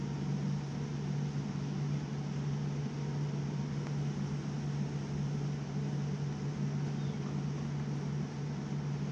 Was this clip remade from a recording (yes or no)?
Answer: no